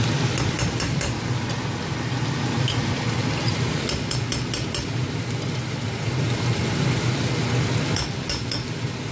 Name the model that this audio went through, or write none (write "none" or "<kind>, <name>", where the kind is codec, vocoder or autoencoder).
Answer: vocoder, BigVGAN v2